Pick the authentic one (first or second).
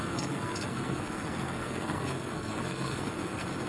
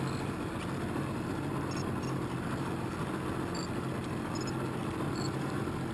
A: second